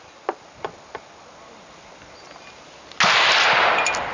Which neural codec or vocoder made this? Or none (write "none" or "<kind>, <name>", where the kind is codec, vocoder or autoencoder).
none